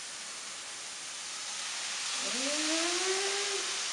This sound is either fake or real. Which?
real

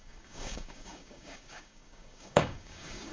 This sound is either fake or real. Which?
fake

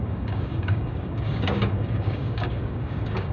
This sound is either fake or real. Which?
fake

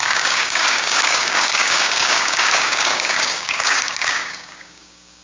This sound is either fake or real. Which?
fake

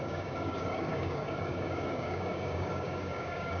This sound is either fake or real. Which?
fake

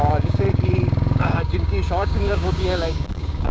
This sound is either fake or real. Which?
fake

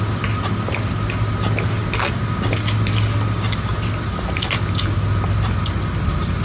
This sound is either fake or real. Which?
real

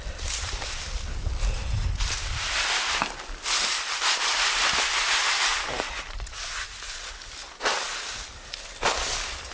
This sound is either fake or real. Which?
real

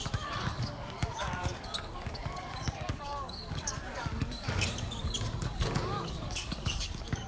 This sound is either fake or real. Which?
fake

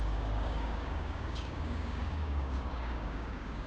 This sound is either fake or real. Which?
fake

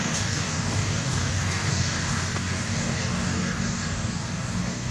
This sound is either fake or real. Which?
fake